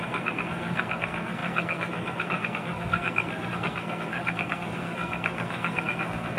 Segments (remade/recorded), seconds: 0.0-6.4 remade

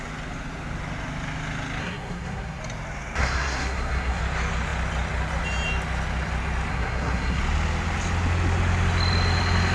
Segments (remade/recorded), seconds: 0.0-1.8 recorded; 1.8-2.6 remade; 2.6-3.2 recorded; 3.2-4.2 remade; 4.2-6.7 recorded; 6.7-7.4 remade; 7.4-9.7 recorded

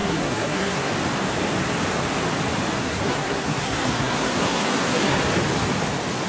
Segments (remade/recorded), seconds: 0.0-0.9 remade; 0.9-2.8 recorded; 2.8-5.2 remade; 5.2-6.3 recorded

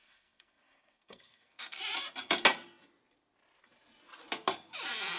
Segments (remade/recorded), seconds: 0.0-1.8 remade; 1.8-5.2 recorded

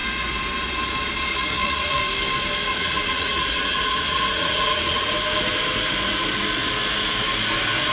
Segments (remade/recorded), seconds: 0.0-1.3 recorded; 1.3-2.0 remade; 2.0-2.7 recorded; 2.7-5.1 remade; 5.1-7.9 recorded

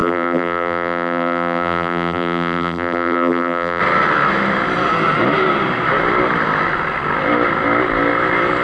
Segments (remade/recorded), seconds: 0.0-3.8 remade; 3.8-8.6 recorded

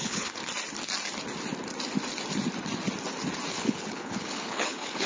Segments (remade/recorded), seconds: 0.0-0.4 remade; 0.4-3.5 recorded; 3.5-5.1 remade

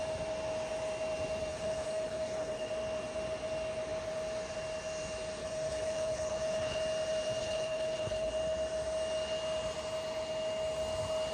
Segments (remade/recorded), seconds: 0.0-1.5 recorded; 1.5-2.7 remade; 2.7-5.4 recorded; 5.4-6.8 remade; 6.8-7.4 recorded; 7.4-8.3 remade; 8.3-11.3 recorded